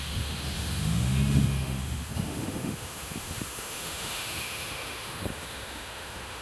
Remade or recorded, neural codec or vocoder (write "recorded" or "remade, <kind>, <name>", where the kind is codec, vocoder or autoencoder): remade, autoencoder, DAC-VAE